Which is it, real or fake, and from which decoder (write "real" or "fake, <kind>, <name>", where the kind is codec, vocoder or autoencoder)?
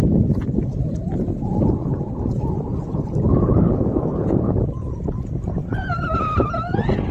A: real